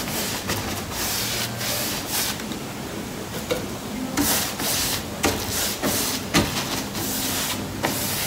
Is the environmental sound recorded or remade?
recorded